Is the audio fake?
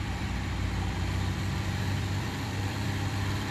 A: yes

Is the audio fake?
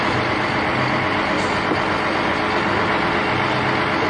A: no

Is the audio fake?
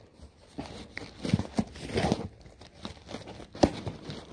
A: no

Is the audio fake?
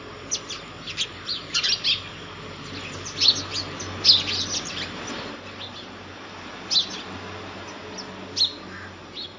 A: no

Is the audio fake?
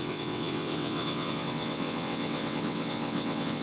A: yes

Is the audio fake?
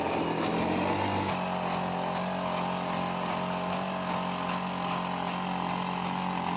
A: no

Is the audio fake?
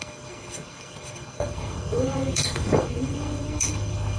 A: yes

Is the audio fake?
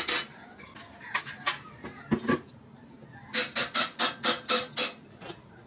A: no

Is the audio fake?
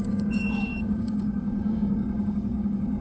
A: yes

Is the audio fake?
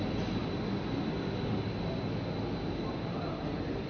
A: no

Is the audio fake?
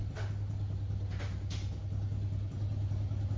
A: no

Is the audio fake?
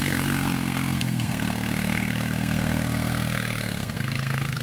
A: yes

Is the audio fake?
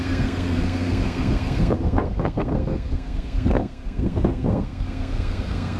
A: yes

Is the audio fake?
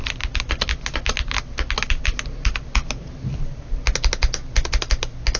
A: no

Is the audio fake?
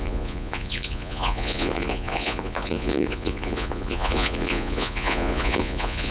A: yes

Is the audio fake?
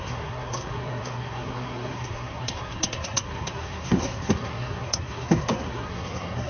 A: yes